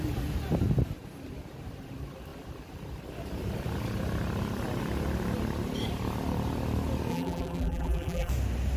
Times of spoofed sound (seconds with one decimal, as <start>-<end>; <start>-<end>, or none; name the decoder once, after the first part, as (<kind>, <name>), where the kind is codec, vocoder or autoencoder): 7.1-8.3 (vocoder, BigVGAN v2)